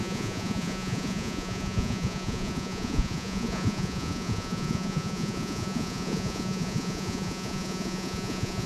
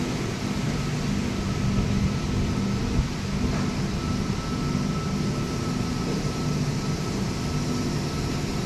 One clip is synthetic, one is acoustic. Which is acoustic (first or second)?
second